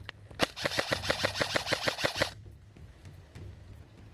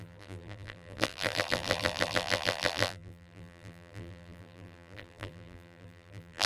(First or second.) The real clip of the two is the first